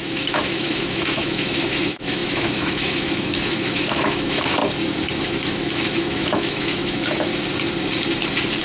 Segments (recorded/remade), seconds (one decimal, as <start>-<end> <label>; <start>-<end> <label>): 0.0-4.6 remade; 4.6-5.2 recorded; 5.2-7.3 remade; 7.3-8.6 recorded